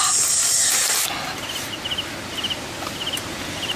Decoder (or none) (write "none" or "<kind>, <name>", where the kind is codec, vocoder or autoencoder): none